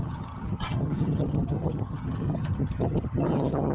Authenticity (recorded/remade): remade